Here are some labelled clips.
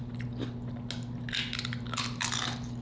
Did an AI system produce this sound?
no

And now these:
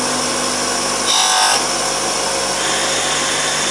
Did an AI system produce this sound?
no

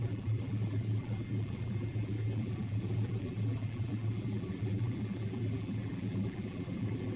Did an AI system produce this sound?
yes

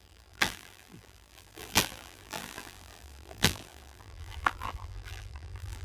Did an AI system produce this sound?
yes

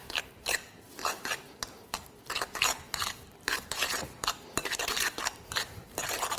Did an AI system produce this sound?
yes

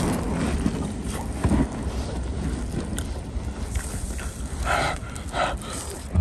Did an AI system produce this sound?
no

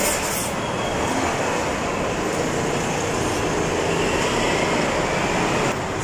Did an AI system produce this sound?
no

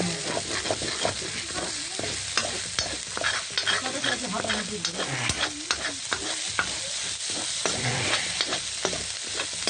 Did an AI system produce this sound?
no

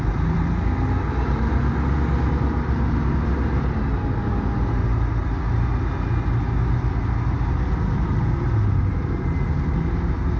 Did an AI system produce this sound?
no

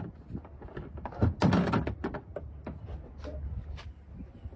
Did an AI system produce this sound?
no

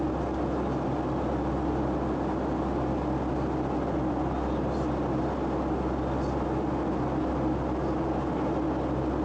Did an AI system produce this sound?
no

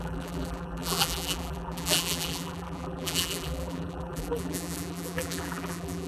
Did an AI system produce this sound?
yes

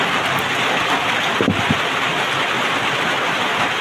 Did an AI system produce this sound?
no